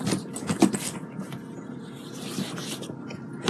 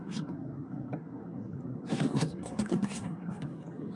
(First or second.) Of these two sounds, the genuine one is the first